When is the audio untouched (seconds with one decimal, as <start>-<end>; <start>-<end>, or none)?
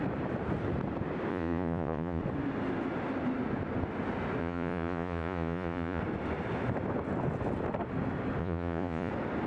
0.0-1.3; 2.2-4.4; 6.0-8.4; 9.1-9.5